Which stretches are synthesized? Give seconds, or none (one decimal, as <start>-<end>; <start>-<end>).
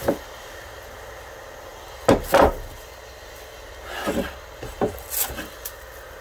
none